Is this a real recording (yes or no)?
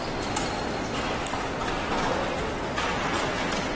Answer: yes